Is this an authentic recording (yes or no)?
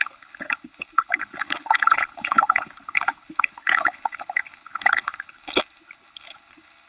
no